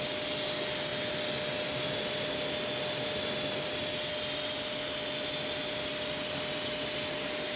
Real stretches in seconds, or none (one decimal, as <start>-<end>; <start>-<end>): 0.0-7.6